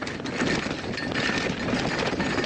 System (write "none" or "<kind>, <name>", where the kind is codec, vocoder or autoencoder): none